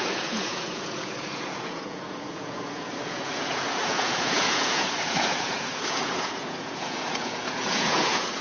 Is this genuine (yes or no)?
no